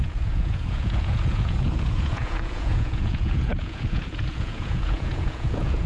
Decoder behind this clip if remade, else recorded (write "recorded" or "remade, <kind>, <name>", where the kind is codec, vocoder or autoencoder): remade, vocoder, Vocos